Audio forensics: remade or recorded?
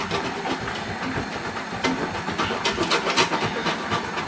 recorded